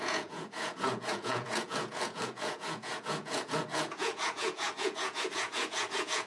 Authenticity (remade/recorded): remade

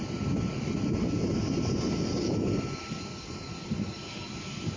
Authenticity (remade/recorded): recorded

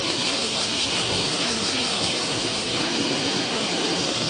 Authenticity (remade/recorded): remade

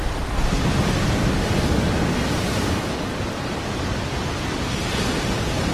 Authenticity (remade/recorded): recorded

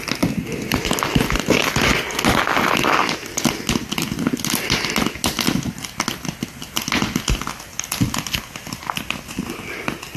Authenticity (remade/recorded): recorded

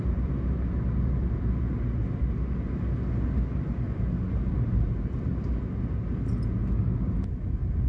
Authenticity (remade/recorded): recorded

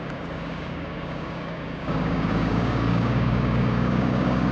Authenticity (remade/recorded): remade